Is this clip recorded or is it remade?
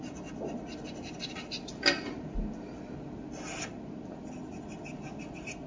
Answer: recorded